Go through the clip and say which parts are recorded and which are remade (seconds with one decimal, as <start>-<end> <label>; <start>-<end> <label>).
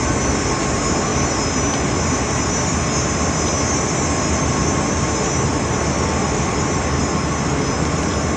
0.0-8.4 recorded